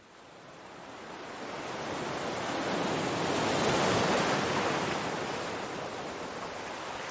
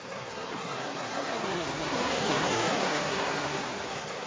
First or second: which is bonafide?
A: first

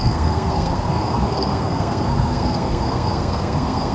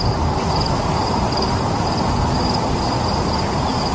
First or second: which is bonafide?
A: second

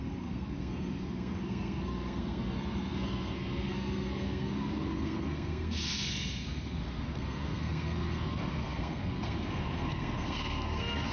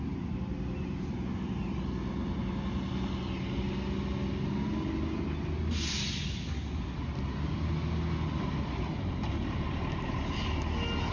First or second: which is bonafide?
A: second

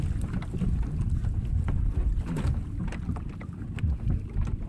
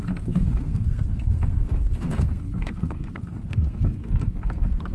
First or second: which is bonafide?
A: first